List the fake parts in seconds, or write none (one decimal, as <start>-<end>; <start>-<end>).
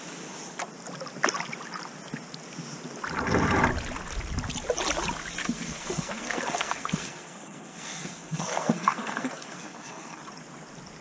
5.4-10.2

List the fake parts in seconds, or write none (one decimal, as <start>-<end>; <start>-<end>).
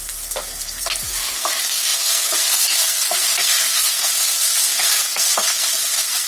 0.0-6.3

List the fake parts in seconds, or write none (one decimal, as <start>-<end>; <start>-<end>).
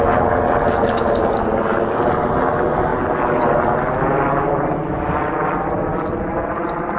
none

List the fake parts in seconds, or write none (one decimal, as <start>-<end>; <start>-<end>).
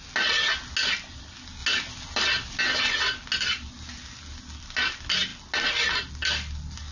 none